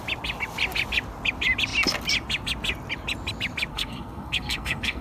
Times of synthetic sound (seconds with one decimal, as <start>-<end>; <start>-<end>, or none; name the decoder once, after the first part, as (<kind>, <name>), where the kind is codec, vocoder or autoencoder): 3.7-5.0 (codec, SNAC)